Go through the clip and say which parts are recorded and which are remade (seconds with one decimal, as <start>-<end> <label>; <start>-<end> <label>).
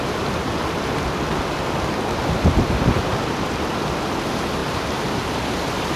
0.0-4.6 recorded; 4.6-5.3 remade; 5.3-6.0 recorded